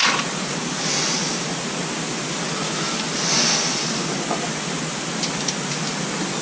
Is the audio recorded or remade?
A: recorded